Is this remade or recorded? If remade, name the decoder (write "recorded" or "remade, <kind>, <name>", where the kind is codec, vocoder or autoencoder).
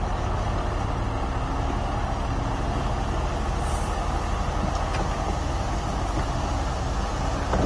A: recorded